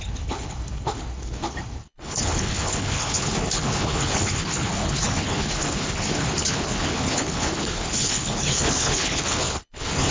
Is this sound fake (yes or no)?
yes